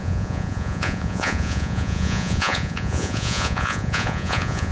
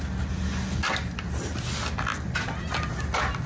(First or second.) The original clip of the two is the second